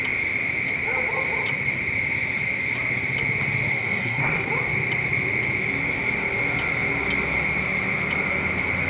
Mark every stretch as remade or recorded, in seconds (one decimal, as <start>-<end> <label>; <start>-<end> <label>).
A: 0.0-3.7 recorded; 3.7-4.5 remade; 4.5-8.9 recorded